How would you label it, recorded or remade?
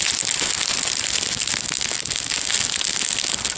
recorded